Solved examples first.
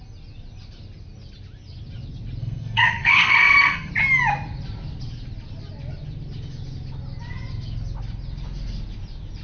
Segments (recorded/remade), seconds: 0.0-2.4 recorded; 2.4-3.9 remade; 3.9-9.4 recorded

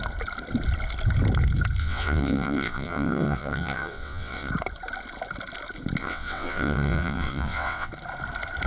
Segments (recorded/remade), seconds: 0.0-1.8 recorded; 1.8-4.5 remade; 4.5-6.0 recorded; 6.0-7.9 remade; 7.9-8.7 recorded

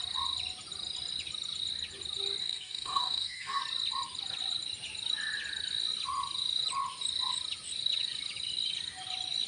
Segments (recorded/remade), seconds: 0.0-2.4 recorded; 2.4-3.6 remade; 3.6-9.5 recorded

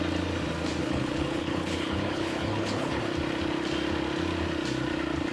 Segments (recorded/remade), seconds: 0.0-0.8 recorded; 0.8-3.0 remade; 3.0-5.3 recorded

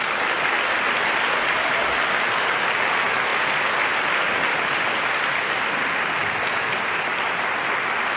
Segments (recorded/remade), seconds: 0.0-8.2 recorded

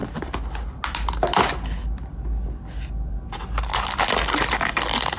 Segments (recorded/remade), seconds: 0.0-5.2 recorded